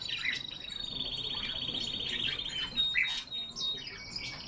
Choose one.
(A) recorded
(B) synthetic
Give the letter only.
A